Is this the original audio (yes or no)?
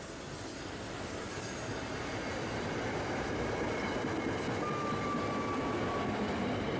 yes